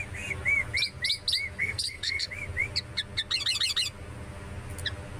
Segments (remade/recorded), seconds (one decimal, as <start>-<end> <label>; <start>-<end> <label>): 0.0-1.6 recorded; 1.6-2.3 remade; 2.3-5.2 recorded